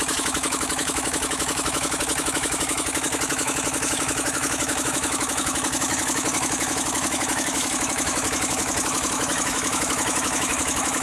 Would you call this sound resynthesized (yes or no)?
yes